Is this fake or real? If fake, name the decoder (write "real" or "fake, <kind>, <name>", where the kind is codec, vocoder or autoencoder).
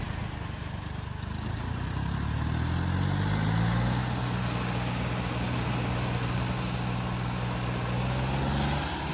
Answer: real